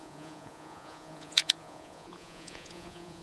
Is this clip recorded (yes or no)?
no